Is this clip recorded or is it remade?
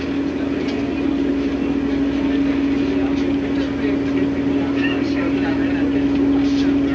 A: recorded